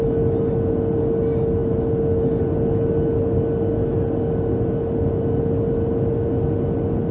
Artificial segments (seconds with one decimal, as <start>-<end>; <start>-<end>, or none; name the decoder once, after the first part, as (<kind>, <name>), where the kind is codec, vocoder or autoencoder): none